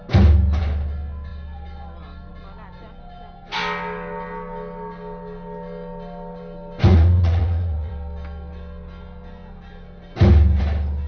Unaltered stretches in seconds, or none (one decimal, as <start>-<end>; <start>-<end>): 0.0-6.9; 7.9-11.1